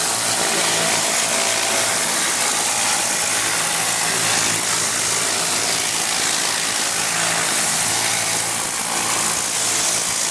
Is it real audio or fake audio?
real